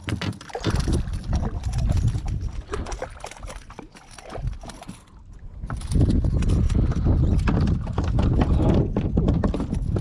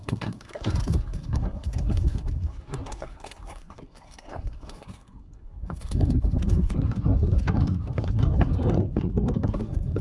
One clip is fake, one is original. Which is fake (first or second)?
second